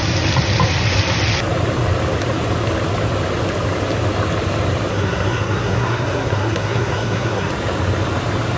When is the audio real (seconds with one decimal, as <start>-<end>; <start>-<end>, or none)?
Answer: 0.0-4.9; 7.5-8.6